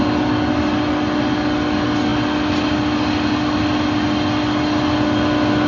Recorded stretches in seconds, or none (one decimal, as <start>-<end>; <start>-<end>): 0.0-5.7